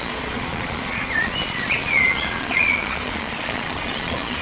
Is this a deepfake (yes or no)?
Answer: yes